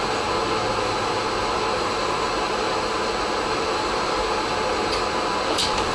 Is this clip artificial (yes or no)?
no